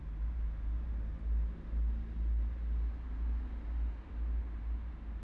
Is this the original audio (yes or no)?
yes